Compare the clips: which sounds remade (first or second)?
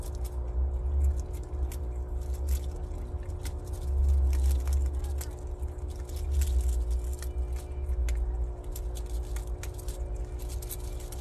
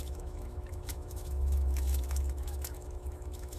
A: second